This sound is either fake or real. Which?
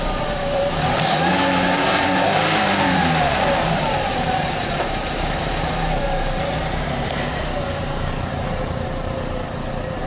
fake